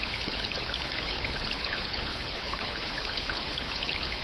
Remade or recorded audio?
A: remade